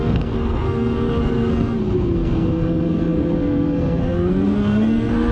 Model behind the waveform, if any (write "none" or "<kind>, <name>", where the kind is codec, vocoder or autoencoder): codec, SNAC